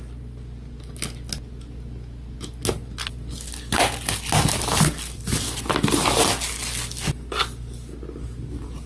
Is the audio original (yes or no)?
yes